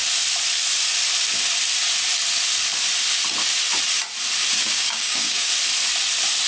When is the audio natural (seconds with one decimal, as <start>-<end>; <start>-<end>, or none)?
0.0-4.6; 5.5-6.5